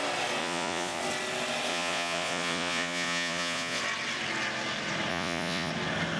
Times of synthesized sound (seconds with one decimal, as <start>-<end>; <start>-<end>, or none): 0.4-1.0; 1.7-3.8; 5.1-5.7